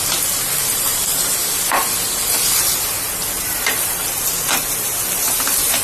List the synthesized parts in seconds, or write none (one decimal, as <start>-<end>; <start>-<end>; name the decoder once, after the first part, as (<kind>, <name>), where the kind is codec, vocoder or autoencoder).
0.9-4.1 (vocoder, BigVGAN v2)